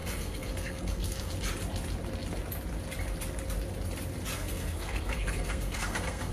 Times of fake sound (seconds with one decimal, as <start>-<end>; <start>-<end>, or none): 0.0-1.3; 4.3-6.3